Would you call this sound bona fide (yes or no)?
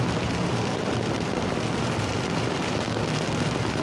no